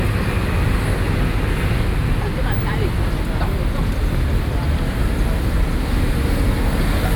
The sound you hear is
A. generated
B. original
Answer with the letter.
B